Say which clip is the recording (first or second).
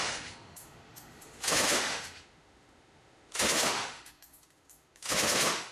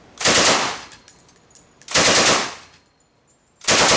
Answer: second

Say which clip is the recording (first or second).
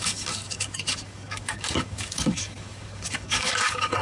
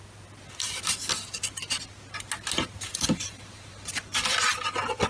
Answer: second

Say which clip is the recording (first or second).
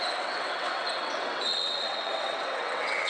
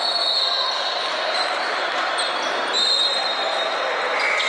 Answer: second